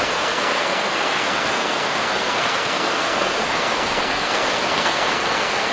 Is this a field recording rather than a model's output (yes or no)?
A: no